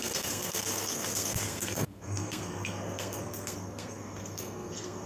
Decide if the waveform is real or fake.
fake